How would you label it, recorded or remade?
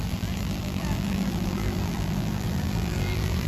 remade